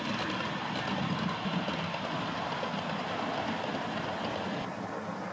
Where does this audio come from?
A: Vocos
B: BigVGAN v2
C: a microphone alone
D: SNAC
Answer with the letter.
C